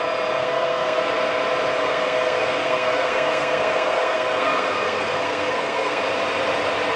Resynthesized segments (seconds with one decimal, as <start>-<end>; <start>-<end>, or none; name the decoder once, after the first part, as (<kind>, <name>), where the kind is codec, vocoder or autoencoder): 0.4-1.0 (codec, SNAC); 1.8-6.0